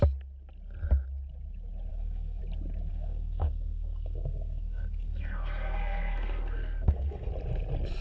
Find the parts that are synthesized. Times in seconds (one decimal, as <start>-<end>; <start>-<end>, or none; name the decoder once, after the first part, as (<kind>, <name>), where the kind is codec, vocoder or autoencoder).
1.9-2.4 (codec, SNAC); 2.9-7.3